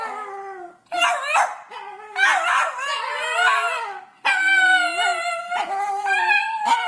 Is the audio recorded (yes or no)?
yes